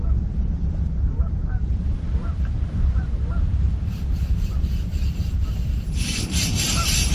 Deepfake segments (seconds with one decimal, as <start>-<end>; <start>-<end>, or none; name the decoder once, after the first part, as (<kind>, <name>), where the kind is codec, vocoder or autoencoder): 0.0-7.1 (vocoder, BigVGAN v2)